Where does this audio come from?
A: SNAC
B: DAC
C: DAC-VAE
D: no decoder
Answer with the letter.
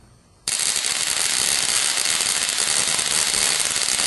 D